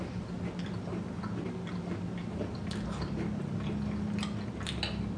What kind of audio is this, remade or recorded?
recorded